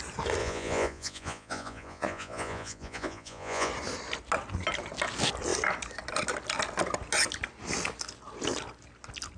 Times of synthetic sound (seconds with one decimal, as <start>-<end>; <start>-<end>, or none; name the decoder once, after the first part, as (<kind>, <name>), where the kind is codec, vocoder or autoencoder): 0.4-3.7 (vocoder, Vocos)